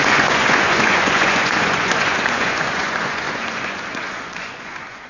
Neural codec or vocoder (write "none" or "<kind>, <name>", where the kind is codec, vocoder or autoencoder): vocoder, Vocos